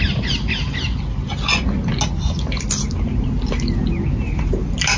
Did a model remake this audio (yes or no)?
no